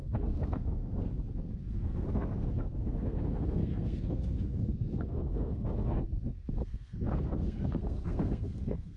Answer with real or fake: fake